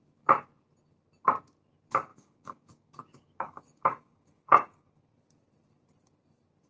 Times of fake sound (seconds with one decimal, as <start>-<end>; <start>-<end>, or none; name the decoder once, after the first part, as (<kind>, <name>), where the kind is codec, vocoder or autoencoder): 2.1-5.0 (codec, DAC)